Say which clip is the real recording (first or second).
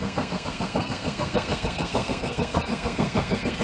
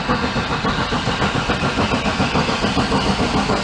second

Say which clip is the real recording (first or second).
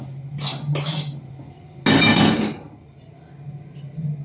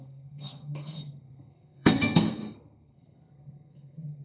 first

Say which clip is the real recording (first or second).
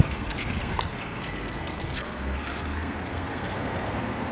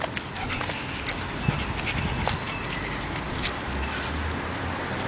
second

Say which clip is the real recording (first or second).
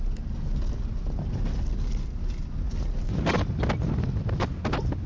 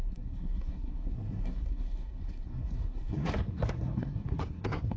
first